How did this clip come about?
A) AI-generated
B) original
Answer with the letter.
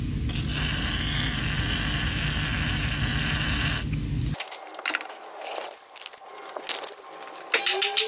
B